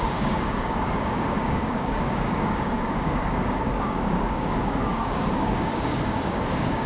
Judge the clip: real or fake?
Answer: fake